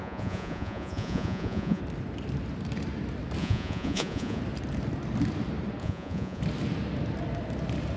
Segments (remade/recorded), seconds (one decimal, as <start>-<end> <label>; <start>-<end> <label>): 0.0-1.8 remade; 1.8-3.4 recorded; 3.4-4.4 remade; 4.4-5.8 recorded; 5.8-6.4 remade; 6.4-8.0 recorded